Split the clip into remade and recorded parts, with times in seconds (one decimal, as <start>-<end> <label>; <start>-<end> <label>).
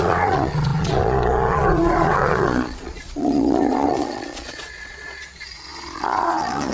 0.0-6.7 remade